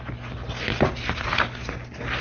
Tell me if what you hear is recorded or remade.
recorded